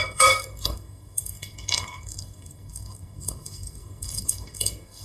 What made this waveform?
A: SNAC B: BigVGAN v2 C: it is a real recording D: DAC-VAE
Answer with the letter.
A